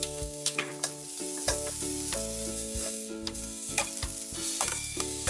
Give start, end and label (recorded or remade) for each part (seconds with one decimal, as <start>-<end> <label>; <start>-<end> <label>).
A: 0.0-0.7 remade; 0.7-2.5 recorded; 2.5-3.8 remade; 3.8-4.6 recorded; 4.6-5.3 remade